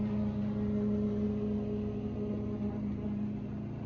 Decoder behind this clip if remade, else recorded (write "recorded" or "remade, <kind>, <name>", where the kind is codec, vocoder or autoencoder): recorded